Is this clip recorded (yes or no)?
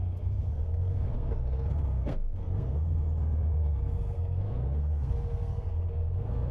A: no